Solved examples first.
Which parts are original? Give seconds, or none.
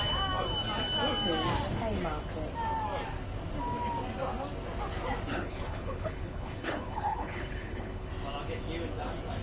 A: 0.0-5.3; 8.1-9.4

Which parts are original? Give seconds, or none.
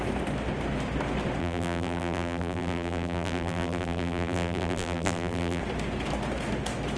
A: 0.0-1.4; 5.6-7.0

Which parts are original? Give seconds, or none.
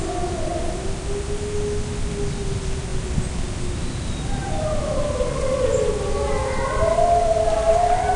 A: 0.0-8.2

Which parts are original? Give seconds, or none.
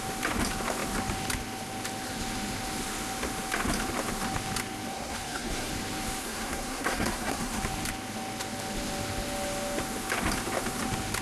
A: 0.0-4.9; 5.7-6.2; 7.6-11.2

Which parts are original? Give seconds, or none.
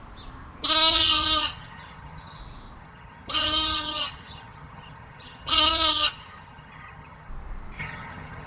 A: 0.0-0.9; 2.4-2.8; 7.3-7.8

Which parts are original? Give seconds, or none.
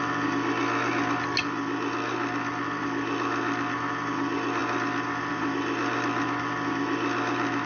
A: 0.0-7.7